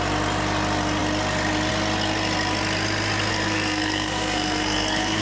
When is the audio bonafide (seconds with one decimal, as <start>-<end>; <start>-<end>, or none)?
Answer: 0.0-3.3